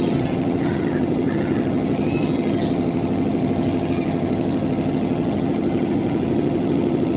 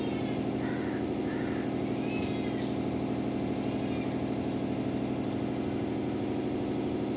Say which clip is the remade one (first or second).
first